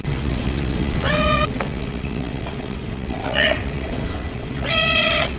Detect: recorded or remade remade